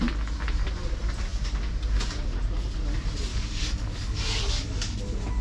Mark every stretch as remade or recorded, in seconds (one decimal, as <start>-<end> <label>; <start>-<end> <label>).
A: 0.0-3.3 recorded; 3.3-5.0 remade; 5.0-5.4 recorded